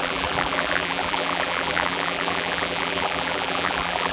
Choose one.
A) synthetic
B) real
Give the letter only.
A